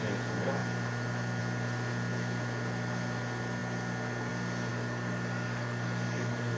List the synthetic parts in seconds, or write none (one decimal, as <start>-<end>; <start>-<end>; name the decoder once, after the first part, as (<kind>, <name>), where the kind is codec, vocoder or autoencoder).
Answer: 4.7-6.6 (codec, DAC)